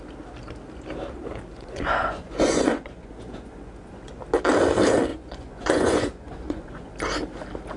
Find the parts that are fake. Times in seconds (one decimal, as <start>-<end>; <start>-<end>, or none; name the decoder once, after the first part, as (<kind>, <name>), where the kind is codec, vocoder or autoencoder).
1.5-4.2 (vocoder, Vocos); 5.1-6.9